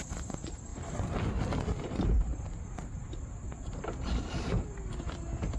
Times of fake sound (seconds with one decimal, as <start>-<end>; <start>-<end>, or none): 0.0-0.7; 1.3-5.6